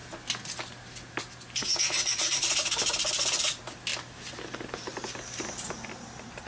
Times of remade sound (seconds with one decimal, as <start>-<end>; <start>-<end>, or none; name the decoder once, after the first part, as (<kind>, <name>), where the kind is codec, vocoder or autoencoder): 1.6-2.5 (vocoder, Vocos)